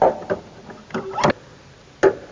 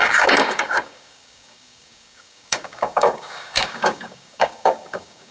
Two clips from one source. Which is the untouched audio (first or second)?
first